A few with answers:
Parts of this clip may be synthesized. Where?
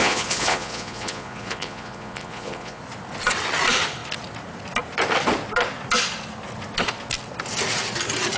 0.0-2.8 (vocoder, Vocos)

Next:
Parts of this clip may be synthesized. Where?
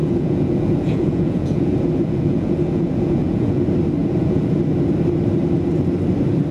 0.0-3.6 (vocoder, Vocos); 4.0-4.6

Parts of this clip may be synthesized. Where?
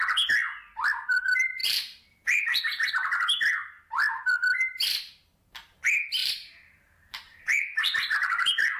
1.6-2.9 (vocoder, BigVGAN v2); 6.2-8.8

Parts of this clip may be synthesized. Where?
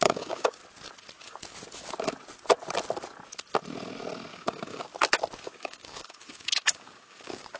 0.0-0.6 (codec, DAC); 4.3-4.9; 5.4-7.6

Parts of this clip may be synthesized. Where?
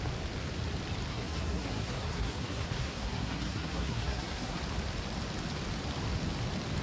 1.1-4.6 (codec, SNAC)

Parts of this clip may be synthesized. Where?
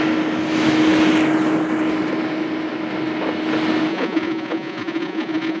3.9-5.6 (vocoder, Vocos)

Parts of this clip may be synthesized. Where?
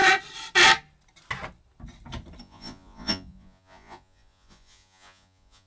2.4-5.7 (vocoder, Vocos)